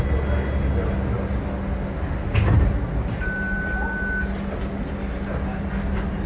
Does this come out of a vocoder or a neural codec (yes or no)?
no